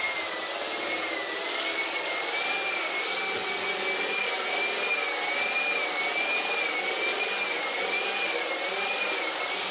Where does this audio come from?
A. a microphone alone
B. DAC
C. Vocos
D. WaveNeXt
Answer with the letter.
A